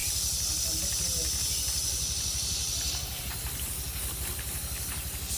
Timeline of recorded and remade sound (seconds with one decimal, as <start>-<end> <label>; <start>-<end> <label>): 0.0-5.4 recorded